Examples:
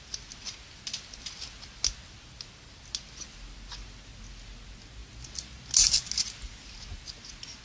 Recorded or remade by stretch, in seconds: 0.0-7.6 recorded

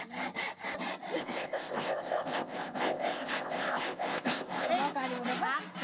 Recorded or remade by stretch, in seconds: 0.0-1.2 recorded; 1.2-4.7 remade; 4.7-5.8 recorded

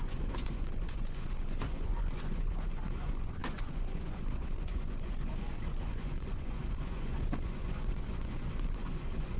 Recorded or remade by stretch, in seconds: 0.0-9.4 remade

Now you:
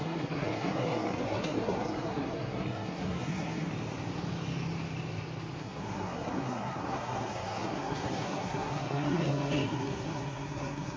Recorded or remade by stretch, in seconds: 0.0-3.7 remade; 3.7-5.6 recorded; 5.6-11.0 remade

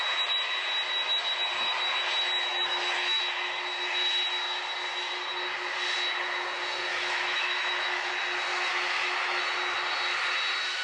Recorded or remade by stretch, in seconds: 0.0-2.5 recorded; 2.5-3.2 remade; 3.2-6.9 recorded; 6.9-8.1 remade; 8.1-8.5 recorded; 8.5-9.4 remade; 9.4-10.8 recorded

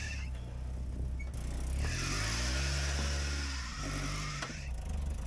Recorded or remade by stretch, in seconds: 0.0-5.3 recorded

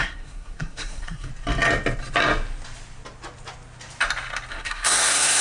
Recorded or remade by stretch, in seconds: 0.0-1.3 remade; 1.3-4.5 recorded; 4.5-5.4 remade